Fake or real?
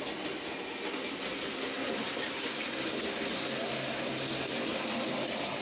real